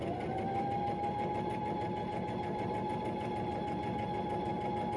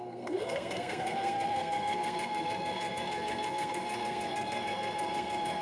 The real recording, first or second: first